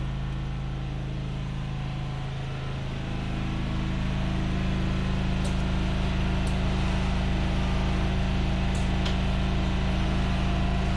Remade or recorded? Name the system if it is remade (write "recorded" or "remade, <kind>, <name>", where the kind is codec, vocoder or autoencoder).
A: recorded